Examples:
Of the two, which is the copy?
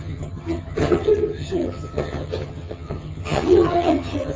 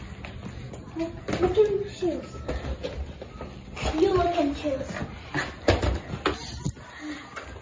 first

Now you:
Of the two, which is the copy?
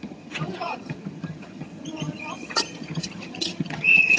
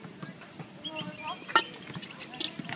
first